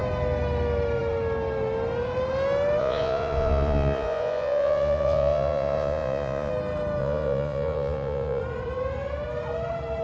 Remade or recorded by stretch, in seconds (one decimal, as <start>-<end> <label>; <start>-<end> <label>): 0.0-2.8 recorded; 2.8-6.5 remade; 6.5-7.0 recorded; 7.0-8.4 remade; 8.4-10.0 recorded